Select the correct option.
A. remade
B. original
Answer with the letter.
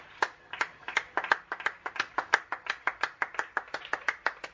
B